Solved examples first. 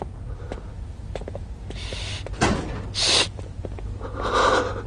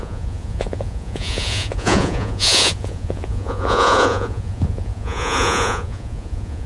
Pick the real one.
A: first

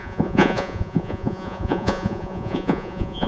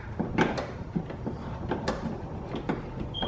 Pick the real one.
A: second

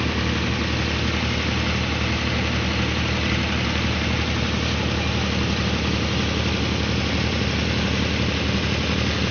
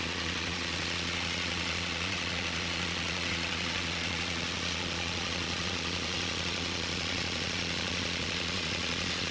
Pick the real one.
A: first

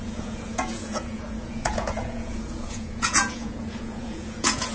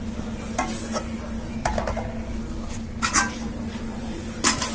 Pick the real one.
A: second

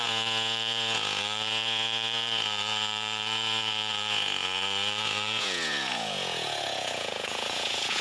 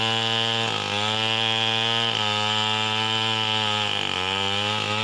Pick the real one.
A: second